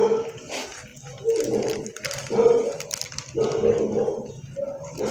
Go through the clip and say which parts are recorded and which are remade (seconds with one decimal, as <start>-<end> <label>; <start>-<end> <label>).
0.0-5.1 recorded